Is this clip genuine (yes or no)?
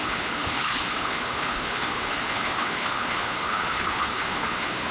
no